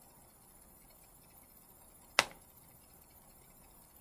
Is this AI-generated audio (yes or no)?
no